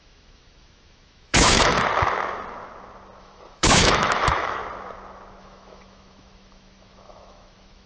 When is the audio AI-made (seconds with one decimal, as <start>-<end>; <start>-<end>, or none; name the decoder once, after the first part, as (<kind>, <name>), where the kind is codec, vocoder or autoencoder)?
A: 0.0-1.7 (autoencoder, DAC-VAE); 3.2-4.6; 5.4-7.9